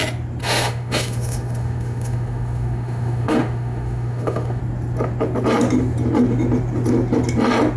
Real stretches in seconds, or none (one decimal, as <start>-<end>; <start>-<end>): 0.0-0.4; 4.6-7.8